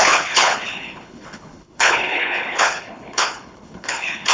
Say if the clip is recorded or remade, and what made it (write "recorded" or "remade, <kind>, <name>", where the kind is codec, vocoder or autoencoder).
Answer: remade, codec, HILCodec